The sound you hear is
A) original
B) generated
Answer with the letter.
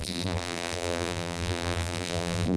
B